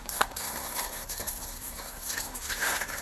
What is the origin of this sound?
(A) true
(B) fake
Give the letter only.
B